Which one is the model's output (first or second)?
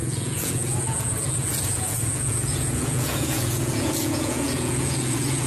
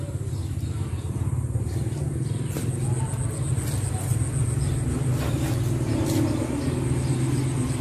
first